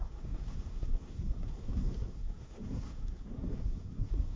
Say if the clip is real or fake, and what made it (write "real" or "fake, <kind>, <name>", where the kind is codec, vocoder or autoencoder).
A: fake, codec, SNAC